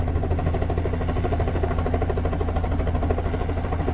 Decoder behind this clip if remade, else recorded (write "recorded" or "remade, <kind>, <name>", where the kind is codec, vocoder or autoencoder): recorded